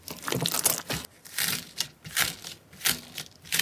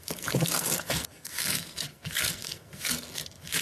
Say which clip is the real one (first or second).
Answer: first